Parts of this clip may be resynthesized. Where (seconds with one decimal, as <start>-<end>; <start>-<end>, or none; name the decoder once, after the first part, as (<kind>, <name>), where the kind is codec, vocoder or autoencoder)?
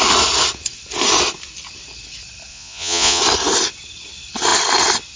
2.5-3.2 (vocoder, Vocos)